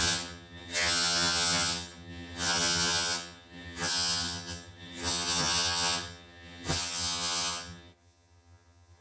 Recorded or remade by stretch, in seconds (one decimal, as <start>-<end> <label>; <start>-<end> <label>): 0.0-9.0 remade